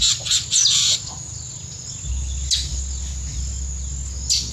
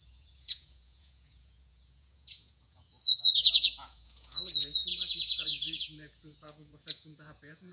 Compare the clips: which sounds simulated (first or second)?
second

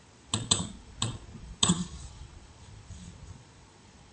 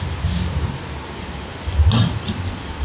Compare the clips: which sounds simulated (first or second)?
first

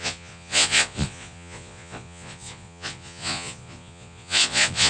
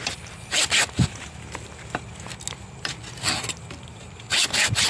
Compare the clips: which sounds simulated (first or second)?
first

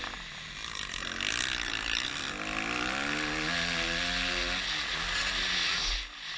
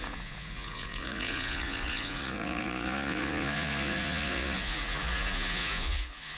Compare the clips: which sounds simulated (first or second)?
second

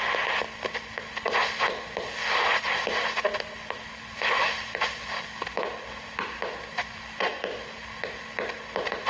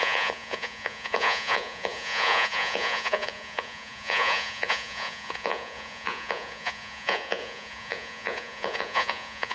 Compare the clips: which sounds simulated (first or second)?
second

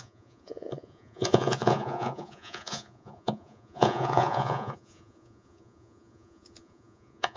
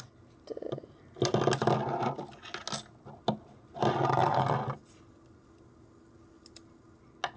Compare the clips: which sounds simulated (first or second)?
first